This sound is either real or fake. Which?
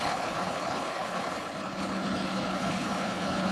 fake